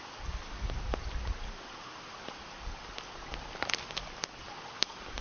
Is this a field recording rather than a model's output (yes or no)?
yes